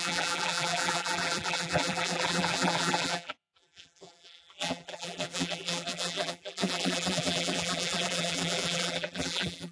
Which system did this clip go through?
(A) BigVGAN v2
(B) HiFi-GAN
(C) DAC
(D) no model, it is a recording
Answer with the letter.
A